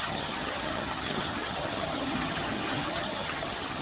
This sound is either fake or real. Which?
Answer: fake